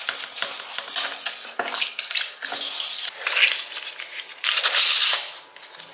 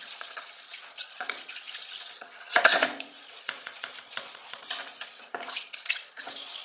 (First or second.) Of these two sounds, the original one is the first